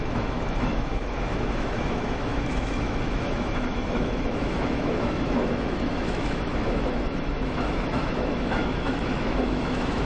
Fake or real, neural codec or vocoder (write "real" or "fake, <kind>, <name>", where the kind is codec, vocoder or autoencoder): fake, autoencoder, DAC-VAE